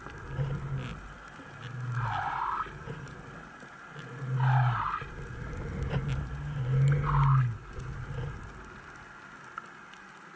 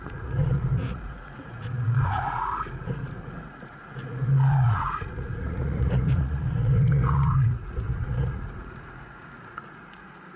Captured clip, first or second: first